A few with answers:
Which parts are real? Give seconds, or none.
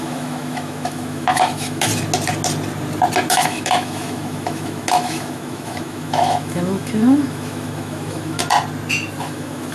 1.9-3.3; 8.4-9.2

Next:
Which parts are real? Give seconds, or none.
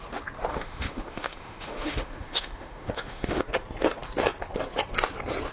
0.0-0.5; 3.4-5.5